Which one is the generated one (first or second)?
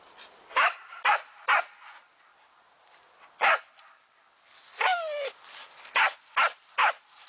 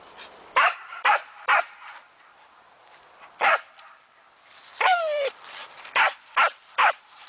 second